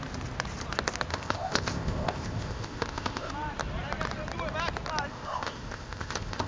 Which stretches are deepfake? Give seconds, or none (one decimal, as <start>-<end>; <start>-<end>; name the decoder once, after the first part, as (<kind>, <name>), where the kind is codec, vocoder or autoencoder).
1.1-3.3 (codec, ZipCodec); 5.1-6.5